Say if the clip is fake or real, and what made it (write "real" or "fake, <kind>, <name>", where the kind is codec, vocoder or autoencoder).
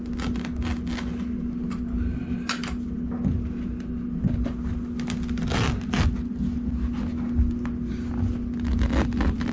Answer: real